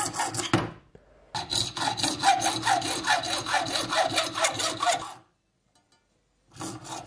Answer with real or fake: real